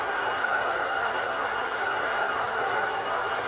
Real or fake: fake